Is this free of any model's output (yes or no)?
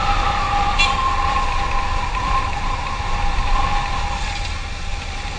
yes